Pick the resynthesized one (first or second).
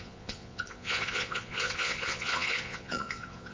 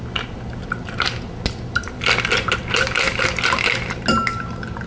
first